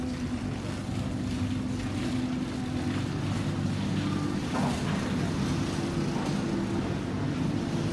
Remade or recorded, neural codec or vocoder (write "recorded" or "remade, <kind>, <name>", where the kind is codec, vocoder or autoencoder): recorded